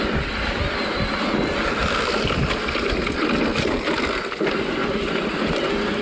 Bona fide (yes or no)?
yes